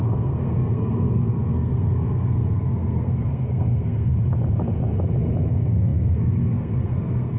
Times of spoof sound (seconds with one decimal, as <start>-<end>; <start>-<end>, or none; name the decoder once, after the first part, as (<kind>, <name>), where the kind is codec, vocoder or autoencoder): 0.0-4.1 (codec, SNAC); 5.5-7.4